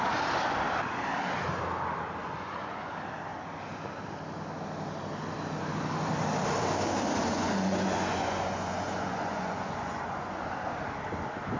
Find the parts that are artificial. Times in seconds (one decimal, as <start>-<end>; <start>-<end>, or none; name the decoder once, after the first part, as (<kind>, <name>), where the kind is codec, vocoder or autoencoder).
2.2-2.9 (vocoder, Vocos); 7.3-10.4